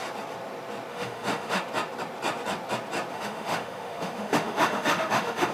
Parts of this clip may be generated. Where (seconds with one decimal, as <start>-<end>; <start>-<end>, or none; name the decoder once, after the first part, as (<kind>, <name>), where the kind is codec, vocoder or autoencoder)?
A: 0.9-1.6 (autoencoder, DAC-VAE); 3.1-5.5